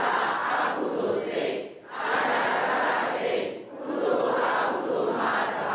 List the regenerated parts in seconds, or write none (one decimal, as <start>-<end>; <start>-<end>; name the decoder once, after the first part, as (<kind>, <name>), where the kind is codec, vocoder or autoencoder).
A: none